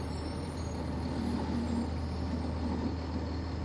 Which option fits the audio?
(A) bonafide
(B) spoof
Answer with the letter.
A